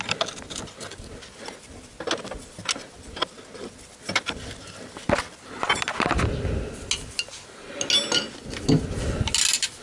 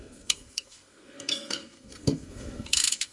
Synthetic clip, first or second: second